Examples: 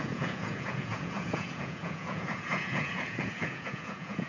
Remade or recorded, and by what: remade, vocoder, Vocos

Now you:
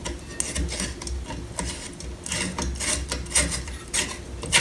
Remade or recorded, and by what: recorded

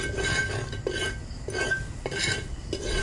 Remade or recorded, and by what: recorded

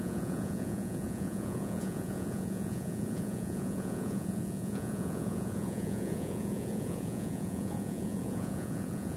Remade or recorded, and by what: remade, vocoder, Vocos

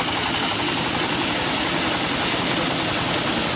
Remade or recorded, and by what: recorded